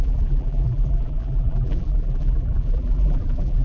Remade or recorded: remade